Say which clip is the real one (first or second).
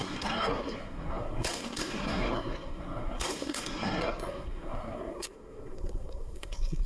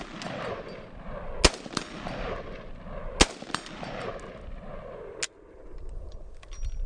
second